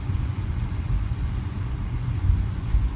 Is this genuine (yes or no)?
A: no